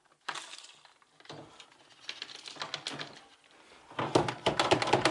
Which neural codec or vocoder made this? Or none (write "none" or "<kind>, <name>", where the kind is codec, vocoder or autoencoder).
none